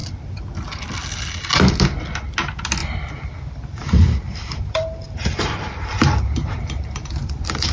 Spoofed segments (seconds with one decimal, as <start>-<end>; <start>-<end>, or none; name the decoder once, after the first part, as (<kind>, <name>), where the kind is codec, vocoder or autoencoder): 2.8-7.7 (vocoder, BigVGAN v2)

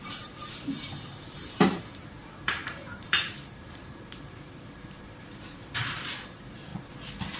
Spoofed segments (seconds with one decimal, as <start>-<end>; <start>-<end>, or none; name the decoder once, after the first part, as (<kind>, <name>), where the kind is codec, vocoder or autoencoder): 0.0-6.7 (vocoder, BigVGAN v2)

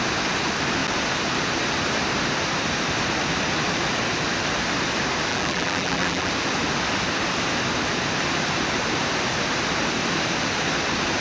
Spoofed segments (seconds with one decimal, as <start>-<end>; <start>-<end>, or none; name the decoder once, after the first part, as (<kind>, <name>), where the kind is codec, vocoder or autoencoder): 5.3-6.3 (vocoder, BigVGAN v2)